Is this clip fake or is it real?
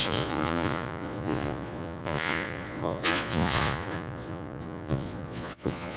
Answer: fake